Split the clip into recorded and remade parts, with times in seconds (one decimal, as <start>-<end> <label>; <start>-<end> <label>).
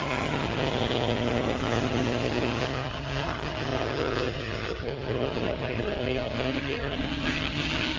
0.0-8.0 remade